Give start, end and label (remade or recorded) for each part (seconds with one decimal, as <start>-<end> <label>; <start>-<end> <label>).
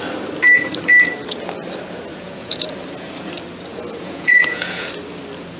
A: 0.0-2.1 recorded; 2.1-2.7 remade; 2.7-4.0 recorded; 4.0-4.9 remade; 4.9-5.6 recorded